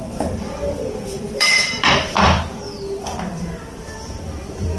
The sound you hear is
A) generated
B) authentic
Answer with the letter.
A